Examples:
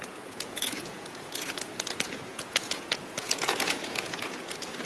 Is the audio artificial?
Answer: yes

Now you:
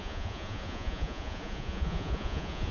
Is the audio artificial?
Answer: yes